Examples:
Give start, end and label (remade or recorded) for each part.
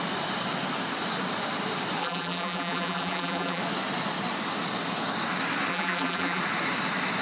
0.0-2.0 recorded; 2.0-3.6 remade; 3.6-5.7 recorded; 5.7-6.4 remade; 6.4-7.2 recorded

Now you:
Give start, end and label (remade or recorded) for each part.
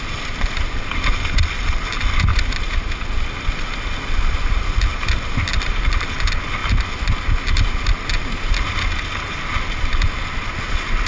0.0-11.1 recorded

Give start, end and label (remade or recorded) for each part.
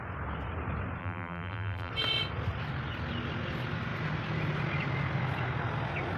0.0-1.0 recorded; 1.0-1.9 remade; 1.9-6.2 recorded